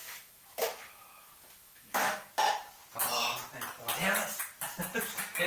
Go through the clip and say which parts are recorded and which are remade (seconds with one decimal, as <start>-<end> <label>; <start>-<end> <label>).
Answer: 0.0-2.3 remade; 2.3-5.5 recorded